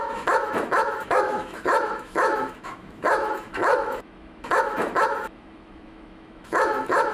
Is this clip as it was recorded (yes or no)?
no